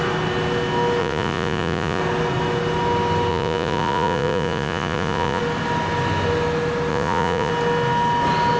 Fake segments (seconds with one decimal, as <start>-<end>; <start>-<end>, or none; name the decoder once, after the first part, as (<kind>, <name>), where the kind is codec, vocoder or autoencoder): 1.0-2.0 (vocoder, Vocos); 3.3-5.4; 6.9-7.5